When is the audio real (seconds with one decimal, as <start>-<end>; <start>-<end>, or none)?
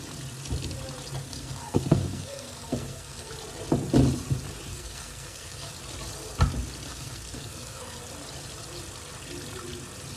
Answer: 0.0-1.2; 3.3-4.7; 5.7-6.9; 8.0-10.2